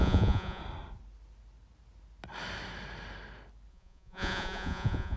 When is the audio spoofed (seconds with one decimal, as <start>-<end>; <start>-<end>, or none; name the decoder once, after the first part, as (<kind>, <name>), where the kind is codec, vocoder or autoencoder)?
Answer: 0.0-0.6 (vocoder, Vocos); 3.7-5.2